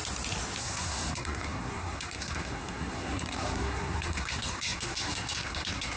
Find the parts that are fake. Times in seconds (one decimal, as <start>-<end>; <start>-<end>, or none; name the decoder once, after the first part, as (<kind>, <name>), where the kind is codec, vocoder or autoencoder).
0.6-6.0 (codec, SNAC)